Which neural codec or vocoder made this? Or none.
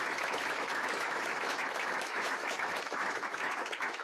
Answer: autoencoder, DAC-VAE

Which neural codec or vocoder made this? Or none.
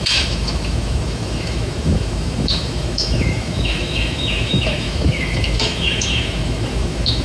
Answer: autoencoder, DAC-VAE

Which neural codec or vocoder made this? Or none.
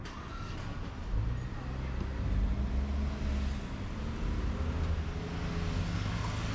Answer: none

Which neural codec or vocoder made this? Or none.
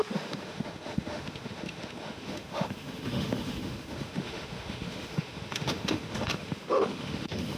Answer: autoencoder, DAC-VAE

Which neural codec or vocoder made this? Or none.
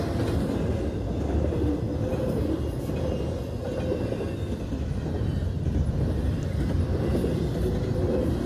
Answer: none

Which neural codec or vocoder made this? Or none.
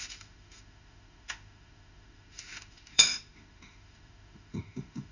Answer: autoencoder, DAC-VAE